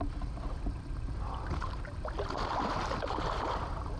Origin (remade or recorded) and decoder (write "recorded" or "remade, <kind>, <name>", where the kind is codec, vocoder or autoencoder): recorded